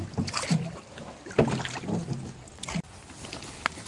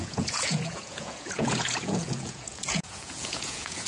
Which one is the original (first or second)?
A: first